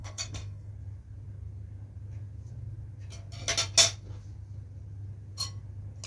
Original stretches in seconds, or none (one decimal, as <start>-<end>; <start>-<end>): 0.7-6.1